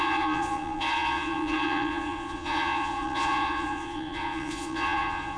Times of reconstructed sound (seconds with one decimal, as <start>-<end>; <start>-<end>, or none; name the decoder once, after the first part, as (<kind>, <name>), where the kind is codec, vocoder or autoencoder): 0.0-5.4 (vocoder, Vocos)